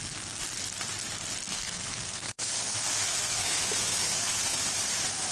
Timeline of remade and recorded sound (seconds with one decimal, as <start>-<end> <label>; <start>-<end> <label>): 0.0-1.5 recorded; 1.5-4.7 remade; 4.7-5.3 recorded